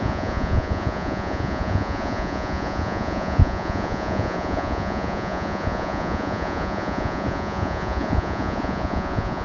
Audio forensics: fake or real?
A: fake